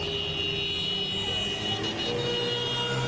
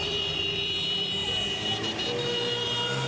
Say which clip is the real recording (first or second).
first